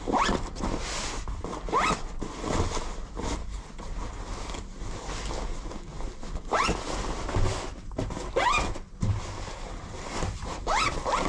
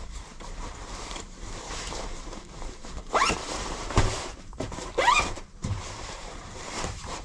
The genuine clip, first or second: first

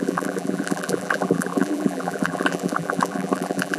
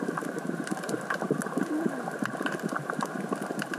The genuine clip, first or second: second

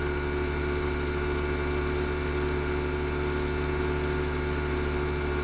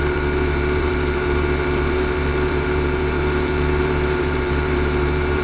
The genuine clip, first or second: first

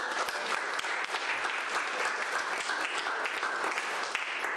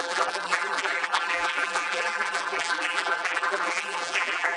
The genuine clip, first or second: first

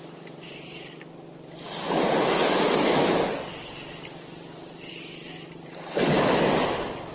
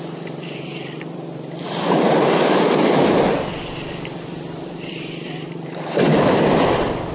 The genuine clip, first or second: first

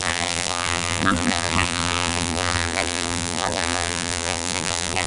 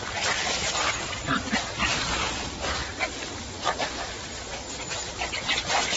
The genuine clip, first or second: second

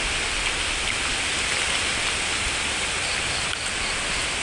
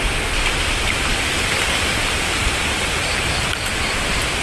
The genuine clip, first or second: first